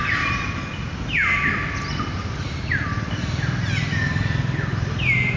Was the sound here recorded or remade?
recorded